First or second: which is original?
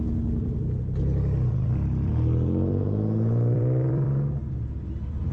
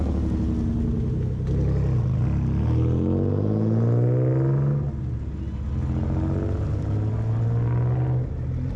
second